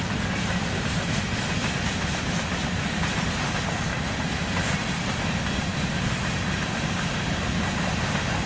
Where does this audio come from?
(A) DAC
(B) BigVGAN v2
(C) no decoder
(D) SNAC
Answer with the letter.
C